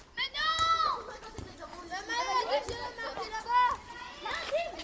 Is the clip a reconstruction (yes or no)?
no